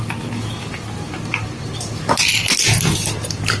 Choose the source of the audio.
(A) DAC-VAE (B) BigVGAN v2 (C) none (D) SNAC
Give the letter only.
C